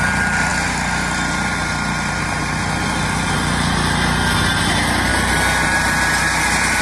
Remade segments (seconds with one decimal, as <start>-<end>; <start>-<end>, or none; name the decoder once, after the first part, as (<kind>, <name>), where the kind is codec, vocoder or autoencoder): none